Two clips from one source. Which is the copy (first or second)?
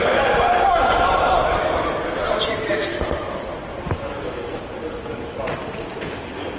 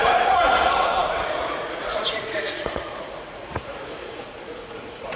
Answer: second